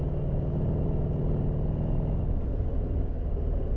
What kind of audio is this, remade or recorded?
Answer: recorded